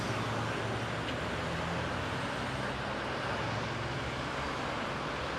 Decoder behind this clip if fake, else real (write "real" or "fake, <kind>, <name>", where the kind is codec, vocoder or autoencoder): real